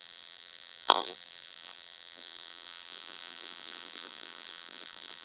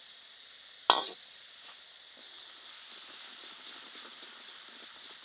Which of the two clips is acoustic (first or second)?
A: second